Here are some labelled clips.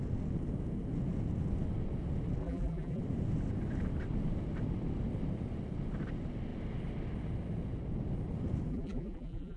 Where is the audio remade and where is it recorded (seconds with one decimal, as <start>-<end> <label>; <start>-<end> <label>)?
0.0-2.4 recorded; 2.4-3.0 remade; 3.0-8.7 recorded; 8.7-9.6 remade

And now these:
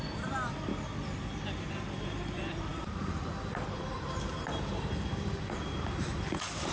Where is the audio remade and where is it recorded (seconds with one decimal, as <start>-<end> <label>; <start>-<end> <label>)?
0.0-0.7 remade; 0.7-1.6 recorded; 1.6-6.7 remade

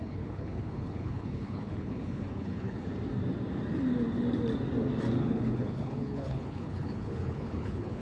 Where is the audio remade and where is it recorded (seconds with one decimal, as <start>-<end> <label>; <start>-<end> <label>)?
0.0-2.9 remade; 2.9-5.2 recorded; 5.2-8.0 remade

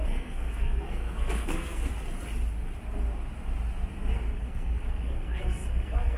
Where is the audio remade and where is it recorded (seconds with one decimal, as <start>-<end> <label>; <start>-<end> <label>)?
0.0-1.9 remade; 1.9-4.4 recorded; 4.4-6.2 remade

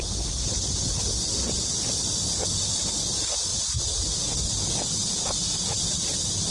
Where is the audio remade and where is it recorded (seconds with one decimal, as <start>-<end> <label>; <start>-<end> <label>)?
0.0-6.5 remade